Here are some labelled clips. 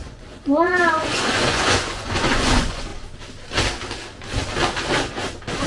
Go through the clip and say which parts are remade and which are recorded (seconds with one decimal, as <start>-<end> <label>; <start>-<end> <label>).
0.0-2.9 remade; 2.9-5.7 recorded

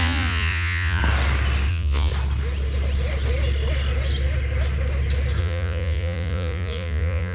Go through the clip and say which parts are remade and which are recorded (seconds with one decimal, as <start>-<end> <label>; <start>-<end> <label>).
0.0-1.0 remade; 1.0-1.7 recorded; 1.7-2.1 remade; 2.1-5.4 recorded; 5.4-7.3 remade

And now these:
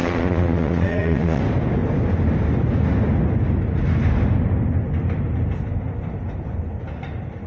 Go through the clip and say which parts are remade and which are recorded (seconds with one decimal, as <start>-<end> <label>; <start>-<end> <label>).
0.0-1.4 remade; 1.4-7.5 recorded

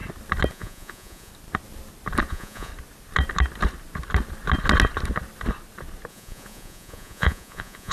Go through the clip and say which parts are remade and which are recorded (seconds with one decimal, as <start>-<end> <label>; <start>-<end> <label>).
0.0-0.5 recorded; 0.5-1.3 remade; 1.3-2.3 recorded; 2.3-2.7 remade; 2.7-6.1 recorded; 6.1-7.9 remade

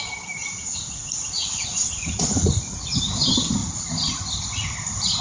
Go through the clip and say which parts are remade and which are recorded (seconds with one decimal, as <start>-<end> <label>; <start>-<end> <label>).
0.0-0.4 recorded; 0.4-3.0 remade; 3.0-5.2 recorded

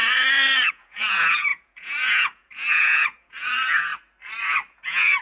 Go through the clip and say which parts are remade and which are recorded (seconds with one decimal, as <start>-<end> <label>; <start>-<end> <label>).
0.0-0.7 recorded; 0.7-3.9 remade; 3.9-4.7 recorded; 4.7-5.2 remade

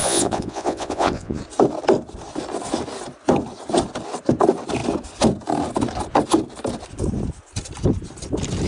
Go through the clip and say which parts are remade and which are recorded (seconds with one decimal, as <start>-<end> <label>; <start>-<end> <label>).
0.0-1.4 remade; 1.4-8.7 recorded